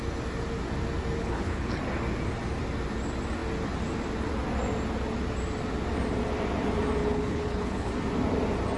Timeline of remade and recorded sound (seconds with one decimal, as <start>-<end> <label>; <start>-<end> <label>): 0.0-1.2 recorded; 1.2-1.8 remade; 1.8-7.0 recorded; 7.0-7.9 remade; 7.9-8.8 recorded